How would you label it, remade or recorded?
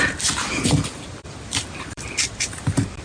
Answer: remade